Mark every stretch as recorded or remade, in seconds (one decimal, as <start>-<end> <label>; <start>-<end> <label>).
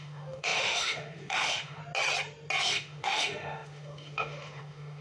0.0-1.8 remade; 1.8-2.6 recorded; 2.6-5.0 remade